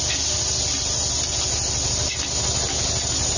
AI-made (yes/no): no